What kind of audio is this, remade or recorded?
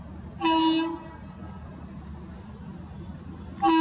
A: recorded